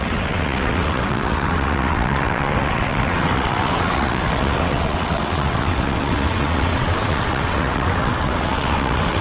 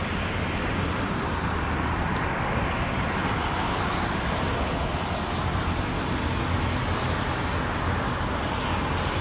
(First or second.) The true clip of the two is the second